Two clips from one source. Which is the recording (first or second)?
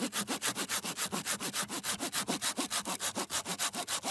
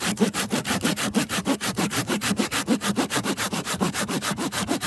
first